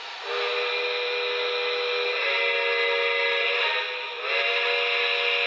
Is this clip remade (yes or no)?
no